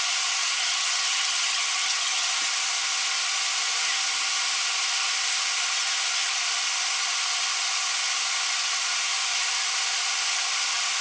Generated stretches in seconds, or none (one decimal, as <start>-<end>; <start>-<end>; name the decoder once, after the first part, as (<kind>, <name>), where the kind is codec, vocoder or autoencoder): 0.4-2.3 (vocoder, HiFi-GAN)